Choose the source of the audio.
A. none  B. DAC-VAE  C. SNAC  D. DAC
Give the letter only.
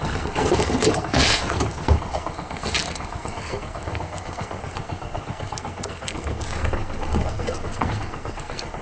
C